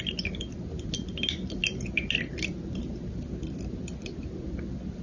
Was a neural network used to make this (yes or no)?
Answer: no